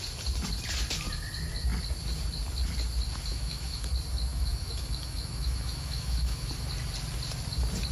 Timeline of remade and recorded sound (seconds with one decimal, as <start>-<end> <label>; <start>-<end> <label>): 0.0-3.3 recorded; 3.3-3.9 remade; 3.9-4.3 recorded; 4.3-6.5 remade; 6.5-7.9 recorded